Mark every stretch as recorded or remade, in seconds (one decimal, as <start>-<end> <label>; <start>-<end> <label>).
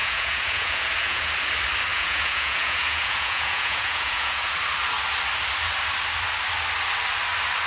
0.0-1.3 remade; 1.3-1.9 recorded; 1.9-4.5 remade; 4.5-7.7 recorded